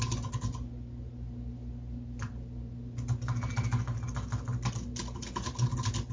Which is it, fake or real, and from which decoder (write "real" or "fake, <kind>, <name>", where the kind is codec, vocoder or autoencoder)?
real